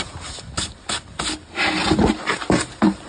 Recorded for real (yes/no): yes